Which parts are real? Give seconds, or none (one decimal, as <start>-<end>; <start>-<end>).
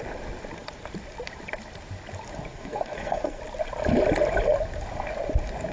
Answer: 0.0-2.5; 3.4-5.7